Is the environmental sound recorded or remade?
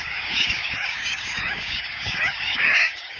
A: remade